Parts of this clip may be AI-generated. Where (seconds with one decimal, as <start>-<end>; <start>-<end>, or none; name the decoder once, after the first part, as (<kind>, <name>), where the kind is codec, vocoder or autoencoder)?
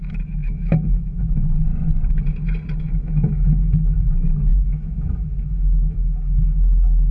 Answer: 0.0-1.7 (autoencoder, DAC-VAE); 2.8-7.1